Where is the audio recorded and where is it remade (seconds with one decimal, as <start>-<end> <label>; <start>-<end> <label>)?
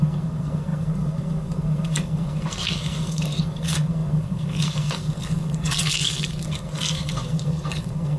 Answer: 0.0-8.2 remade